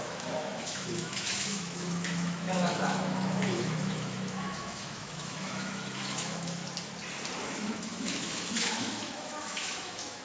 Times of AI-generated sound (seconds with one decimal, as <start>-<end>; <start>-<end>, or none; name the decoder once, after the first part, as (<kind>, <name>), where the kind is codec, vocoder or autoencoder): 0.0-6.6 (autoencoder, DAC-VAE); 7.5-10.2